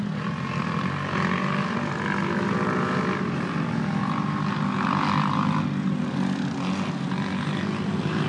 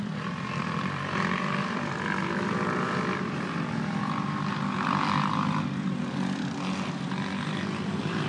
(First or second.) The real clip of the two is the first